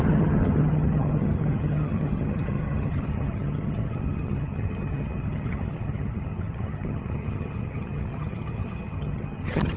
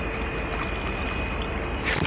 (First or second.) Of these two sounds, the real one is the second